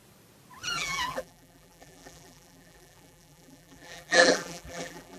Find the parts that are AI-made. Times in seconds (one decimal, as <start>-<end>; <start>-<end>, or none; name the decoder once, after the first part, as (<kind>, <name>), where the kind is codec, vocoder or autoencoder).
0.7-5.2 (vocoder, BigVGAN v2)